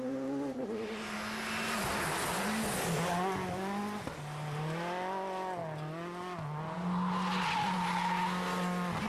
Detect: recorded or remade recorded